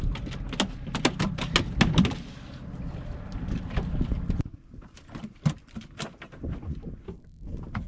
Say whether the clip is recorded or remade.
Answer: recorded